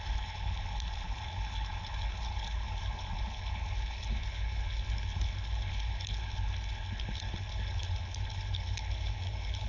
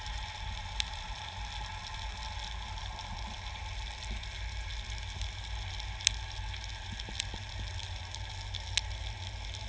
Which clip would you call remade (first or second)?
first